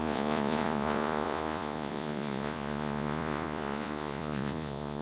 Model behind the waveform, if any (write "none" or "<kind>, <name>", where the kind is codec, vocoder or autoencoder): vocoder, Vocos